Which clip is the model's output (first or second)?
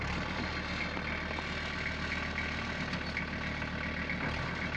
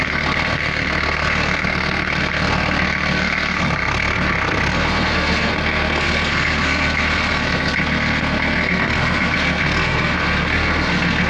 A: second